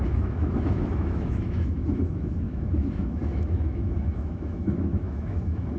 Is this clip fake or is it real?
fake